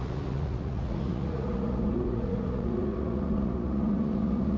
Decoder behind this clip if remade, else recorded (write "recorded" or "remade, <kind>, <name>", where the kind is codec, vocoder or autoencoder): remade, vocoder, Vocos